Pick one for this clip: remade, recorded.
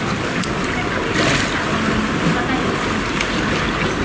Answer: recorded